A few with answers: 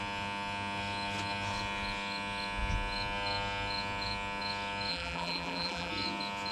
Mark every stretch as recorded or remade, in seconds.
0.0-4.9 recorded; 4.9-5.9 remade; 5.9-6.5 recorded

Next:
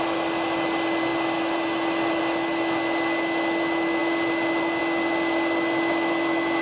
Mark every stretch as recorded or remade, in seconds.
0.0-6.6 recorded

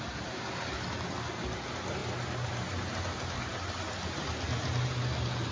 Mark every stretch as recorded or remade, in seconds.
0.0-5.5 recorded

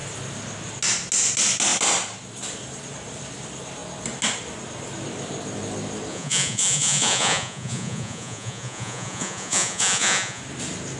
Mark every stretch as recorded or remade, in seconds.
0.0-6.1 recorded; 6.1-10.4 remade; 10.4-11.0 recorded

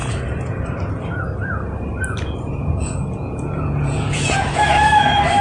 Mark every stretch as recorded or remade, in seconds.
0.0-2.6 recorded; 2.6-4.6 remade; 4.6-5.4 recorded

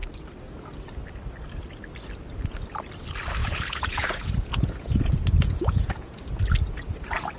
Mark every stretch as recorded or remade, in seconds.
0.0-3.4 recorded; 3.4-6.3 remade; 6.3-7.4 recorded

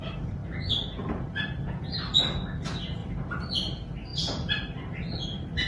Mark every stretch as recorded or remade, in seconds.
0.0-2.1 remade; 2.1-2.6 recorded; 2.6-4.1 remade; 4.1-5.7 recorded

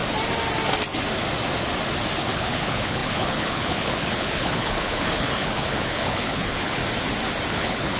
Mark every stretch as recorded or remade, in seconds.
0.0-2.2 recorded; 2.2-6.8 remade; 6.8-7.5 recorded; 7.5-8.0 remade